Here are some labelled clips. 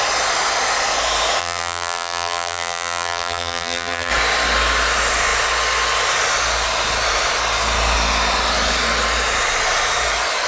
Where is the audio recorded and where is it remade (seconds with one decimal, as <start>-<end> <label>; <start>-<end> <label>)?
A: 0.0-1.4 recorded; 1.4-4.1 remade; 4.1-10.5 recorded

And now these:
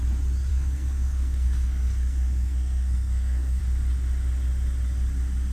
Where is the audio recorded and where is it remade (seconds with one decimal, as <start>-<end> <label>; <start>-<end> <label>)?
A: 0.0-0.5 recorded; 0.5-3.6 remade; 3.6-5.5 recorded

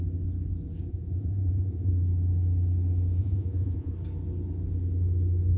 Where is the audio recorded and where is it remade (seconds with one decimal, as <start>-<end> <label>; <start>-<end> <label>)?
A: 0.0-0.9 recorded; 0.9-1.9 remade; 1.9-3.2 recorded; 3.2-3.9 remade; 3.9-5.6 recorded

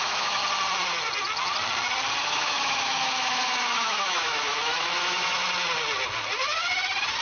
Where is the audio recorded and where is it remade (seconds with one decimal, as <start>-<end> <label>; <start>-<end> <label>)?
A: 0.0-0.4 remade; 0.4-2.2 recorded; 2.2-5.4 remade; 5.4-7.2 recorded